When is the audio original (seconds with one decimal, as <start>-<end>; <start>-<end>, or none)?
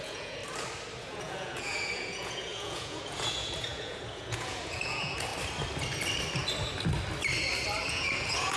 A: 0.4-1.0; 5.3-7.9